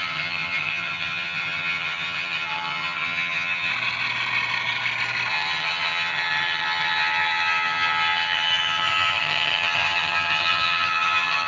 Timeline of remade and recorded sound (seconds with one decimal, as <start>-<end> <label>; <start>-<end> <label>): 0.0-3.7 remade; 3.7-5.3 recorded; 5.3-11.5 remade